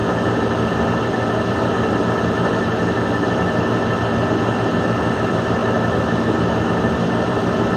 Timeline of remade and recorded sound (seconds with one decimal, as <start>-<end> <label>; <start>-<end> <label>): 0.0-4.6 recorded; 4.6-5.6 remade; 5.6-6.7 recorded; 6.7-7.8 remade